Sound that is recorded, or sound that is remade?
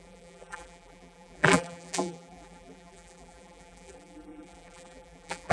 remade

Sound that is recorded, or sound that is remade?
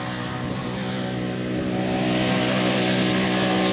recorded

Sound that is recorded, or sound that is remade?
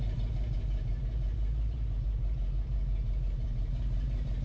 remade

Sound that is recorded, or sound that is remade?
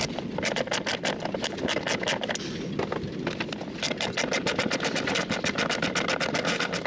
recorded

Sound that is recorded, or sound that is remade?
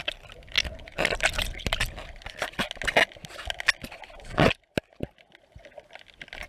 recorded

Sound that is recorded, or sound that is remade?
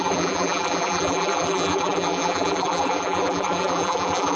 remade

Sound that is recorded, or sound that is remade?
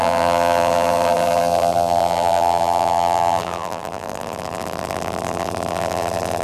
remade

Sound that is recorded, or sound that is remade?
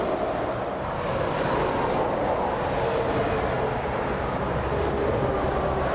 recorded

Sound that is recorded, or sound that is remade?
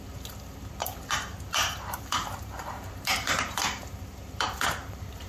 remade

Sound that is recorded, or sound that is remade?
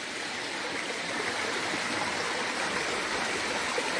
recorded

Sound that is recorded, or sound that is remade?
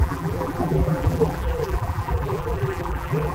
remade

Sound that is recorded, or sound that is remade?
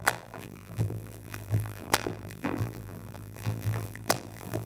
remade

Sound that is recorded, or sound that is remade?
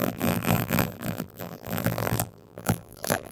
remade